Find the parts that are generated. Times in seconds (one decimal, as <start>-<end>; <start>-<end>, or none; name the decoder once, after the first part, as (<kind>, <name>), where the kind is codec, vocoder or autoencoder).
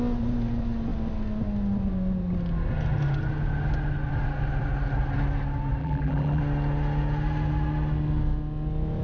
5.8-6.4 (vocoder, BigVGAN v2)